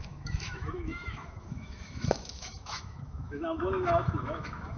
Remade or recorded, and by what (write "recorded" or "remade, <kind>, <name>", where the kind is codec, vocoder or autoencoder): remade, autoencoder, DAC-VAE